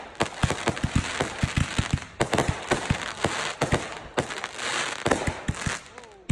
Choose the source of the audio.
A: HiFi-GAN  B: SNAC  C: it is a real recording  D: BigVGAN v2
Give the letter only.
C